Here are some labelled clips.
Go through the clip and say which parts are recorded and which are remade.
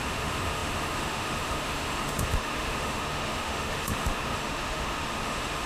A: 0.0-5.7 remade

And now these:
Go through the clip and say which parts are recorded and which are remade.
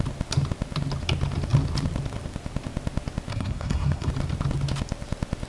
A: 0.0-3.3 recorded; 3.3-4.1 remade; 4.1-5.5 recorded